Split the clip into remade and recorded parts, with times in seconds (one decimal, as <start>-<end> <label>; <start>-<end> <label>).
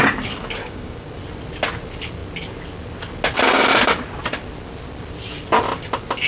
0.0-0.6 recorded; 0.6-1.1 remade; 1.1-6.3 recorded